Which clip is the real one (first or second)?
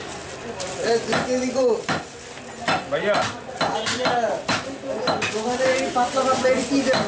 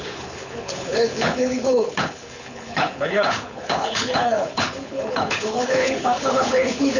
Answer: first